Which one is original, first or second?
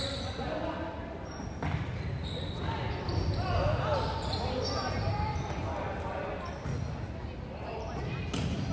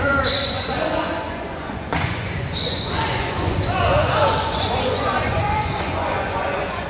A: first